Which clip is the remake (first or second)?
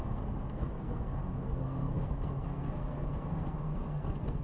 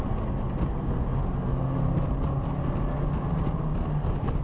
first